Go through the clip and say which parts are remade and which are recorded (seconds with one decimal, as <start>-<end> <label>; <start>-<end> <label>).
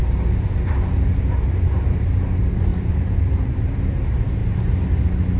0.0-2.7 recorded; 2.7-4.0 remade; 4.0-5.4 recorded